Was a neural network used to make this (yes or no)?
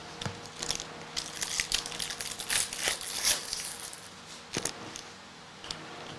no